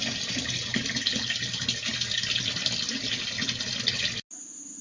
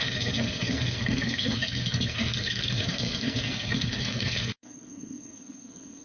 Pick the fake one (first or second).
second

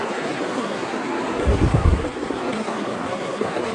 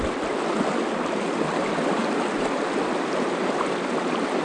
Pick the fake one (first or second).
first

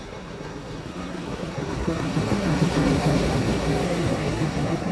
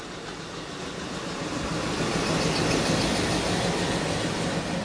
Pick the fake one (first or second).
first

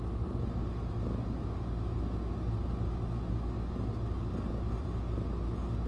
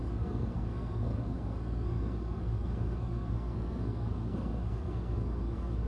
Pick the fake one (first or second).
second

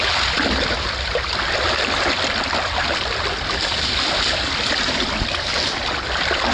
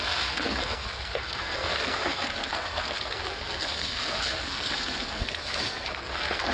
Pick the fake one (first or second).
second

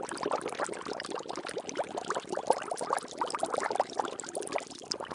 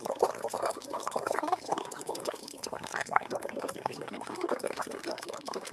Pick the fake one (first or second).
second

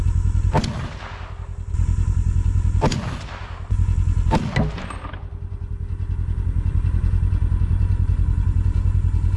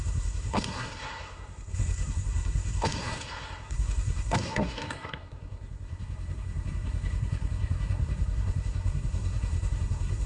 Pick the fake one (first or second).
second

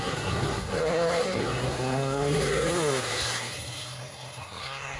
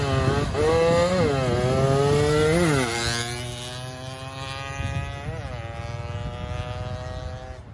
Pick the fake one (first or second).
first